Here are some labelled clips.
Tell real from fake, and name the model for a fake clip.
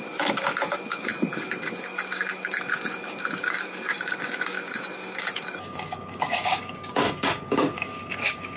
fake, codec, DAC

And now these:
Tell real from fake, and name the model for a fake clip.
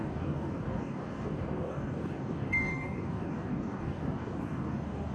fake, codec, DAC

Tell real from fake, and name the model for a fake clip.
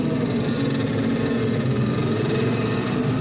real